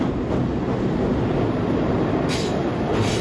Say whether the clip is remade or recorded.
recorded